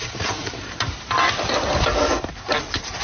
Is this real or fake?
real